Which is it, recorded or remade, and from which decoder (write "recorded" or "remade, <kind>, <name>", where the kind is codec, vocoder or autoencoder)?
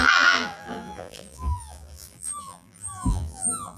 remade, vocoder, BigVGAN v2